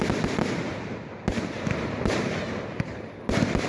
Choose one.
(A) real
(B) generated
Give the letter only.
A